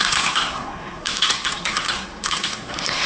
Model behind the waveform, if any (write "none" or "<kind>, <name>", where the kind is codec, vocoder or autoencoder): codec, SNAC